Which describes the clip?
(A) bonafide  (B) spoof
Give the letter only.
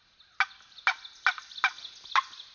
A